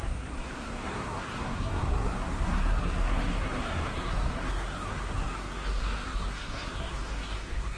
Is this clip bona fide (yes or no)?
no